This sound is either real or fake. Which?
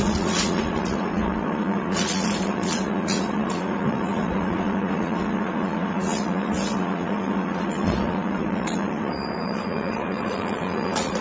fake